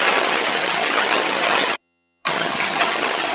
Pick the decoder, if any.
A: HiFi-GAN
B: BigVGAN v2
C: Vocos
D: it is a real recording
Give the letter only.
A